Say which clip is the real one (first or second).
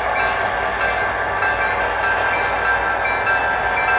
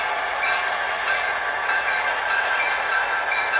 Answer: first